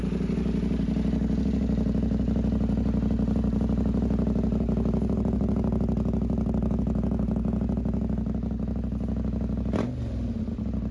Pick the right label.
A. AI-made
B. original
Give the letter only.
B